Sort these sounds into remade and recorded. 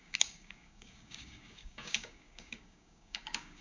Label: remade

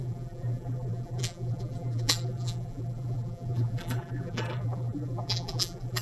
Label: remade